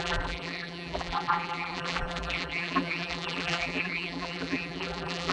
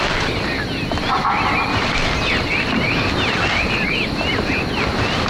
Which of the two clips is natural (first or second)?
second